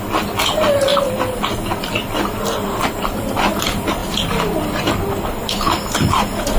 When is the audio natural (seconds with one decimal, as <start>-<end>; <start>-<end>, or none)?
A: 0.0-6.6